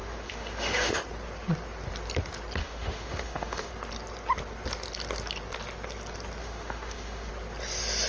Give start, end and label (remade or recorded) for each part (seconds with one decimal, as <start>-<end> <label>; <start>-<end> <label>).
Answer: 0.0-0.9 remade; 0.9-2.6 recorded; 2.6-3.7 remade; 3.7-6.4 recorded; 6.4-7.3 remade; 7.3-8.1 recorded